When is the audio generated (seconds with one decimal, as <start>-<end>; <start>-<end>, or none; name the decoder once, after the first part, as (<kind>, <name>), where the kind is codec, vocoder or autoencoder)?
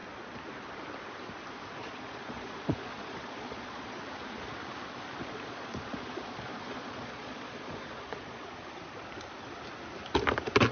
1.8-4.0 (vocoder, Vocos); 5.2-8.6